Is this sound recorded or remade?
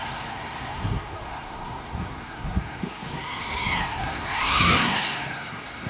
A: remade